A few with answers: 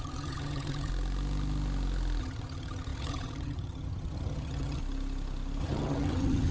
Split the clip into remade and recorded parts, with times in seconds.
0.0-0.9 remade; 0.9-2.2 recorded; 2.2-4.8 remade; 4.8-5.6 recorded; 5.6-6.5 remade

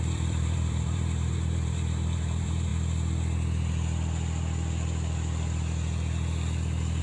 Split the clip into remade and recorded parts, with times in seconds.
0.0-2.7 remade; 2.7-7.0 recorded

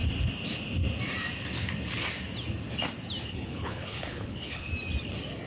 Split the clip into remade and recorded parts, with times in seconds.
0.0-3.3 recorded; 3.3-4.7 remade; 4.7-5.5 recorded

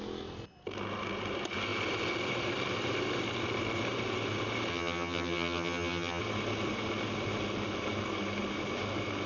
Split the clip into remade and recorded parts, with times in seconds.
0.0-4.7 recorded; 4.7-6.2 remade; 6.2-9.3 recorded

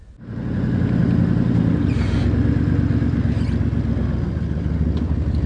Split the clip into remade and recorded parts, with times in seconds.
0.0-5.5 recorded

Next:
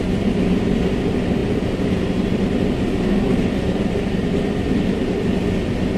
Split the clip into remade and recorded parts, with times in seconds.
0.0-6.0 recorded

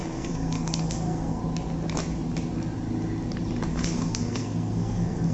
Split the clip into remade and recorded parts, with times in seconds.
0.0-1.4 remade; 1.4-3.7 recorded; 3.7-5.3 remade

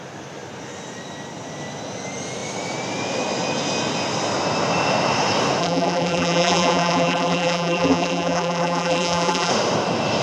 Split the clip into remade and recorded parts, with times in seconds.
0.0-5.6 recorded; 5.6-9.5 remade; 9.5-10.2 recorded